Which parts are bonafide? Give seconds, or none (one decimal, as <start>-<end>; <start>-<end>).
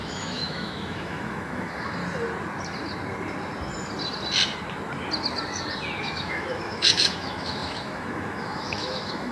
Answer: 2.0-6.0